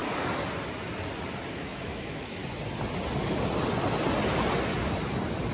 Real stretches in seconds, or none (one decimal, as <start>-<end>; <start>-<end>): 0.0-1.5; 2.4-5.5